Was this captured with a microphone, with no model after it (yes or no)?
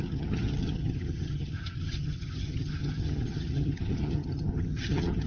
no